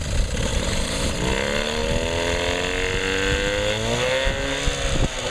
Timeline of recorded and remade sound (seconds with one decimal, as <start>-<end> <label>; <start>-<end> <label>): 0.0-0.5 recorded; 0.5-1.3 remade; 1.3-5.3 recorded